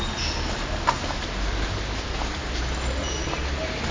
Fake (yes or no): no